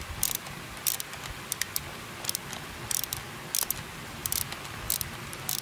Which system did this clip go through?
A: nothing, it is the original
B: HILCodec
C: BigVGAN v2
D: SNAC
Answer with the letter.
A